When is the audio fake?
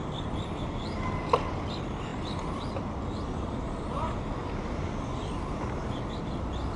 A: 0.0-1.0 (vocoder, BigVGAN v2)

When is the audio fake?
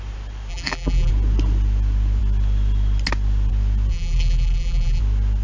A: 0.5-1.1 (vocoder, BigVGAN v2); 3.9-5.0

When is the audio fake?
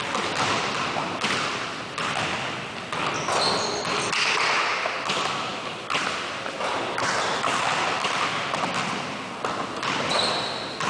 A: none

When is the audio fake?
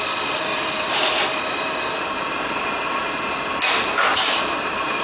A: 0.5-3.2 (vocoder, BigVGAN v2); 4.1-5.0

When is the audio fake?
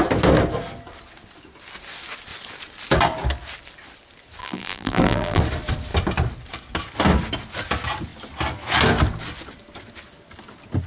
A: 4.4-5.4 (vocoder, BigVGAN v2)